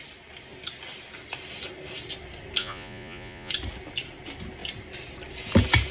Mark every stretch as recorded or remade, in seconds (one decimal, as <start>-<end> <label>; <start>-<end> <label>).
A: 0.0-2.6 recorded; 2.6-3.5 remade; 3.5-5.9 recorded